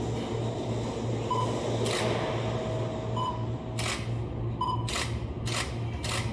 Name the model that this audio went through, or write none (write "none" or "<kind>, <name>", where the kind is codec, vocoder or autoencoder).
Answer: none